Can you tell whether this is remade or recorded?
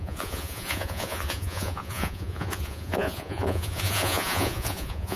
remade